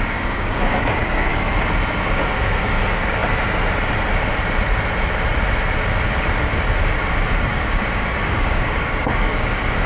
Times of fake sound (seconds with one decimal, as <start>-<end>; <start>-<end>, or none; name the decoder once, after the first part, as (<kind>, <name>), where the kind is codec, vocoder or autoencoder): 0.0-1.3 (codec, DAC); 2.1-3.2; 7.1-9.9

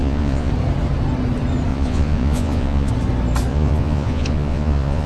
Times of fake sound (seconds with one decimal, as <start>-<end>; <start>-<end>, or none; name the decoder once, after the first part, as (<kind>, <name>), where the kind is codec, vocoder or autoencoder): 0.0-0.5 (vocoder, Vocos); 1.7-2.9; 3.5-5.1

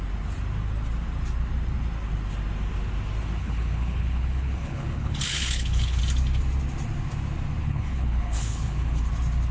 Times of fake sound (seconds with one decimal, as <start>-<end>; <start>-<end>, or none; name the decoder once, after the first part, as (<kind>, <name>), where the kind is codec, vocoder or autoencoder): 3.4-6.0 (codec, HILCodec); 7.6-9.1

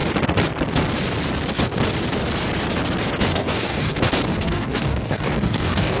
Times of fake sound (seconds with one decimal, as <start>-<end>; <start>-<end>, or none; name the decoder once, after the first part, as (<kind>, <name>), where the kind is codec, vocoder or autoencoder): 3.3-3.9 (codec, DAC); 4.3-6.0

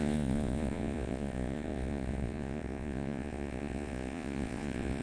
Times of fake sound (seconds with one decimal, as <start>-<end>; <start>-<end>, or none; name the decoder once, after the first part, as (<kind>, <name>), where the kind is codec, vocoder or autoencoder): 0.0-5.0 (vocoder, Vocos)

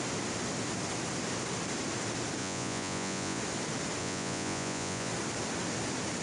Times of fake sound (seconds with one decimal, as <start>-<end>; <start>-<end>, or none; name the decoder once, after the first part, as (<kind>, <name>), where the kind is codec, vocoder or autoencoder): 2.4-3.4 (vocoder, Vocos); 4.0-5.1

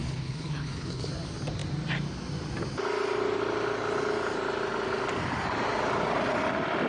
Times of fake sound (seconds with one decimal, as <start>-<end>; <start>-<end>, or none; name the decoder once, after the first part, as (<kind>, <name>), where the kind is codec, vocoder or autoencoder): 0.0-1.1 (codec, HILCodec)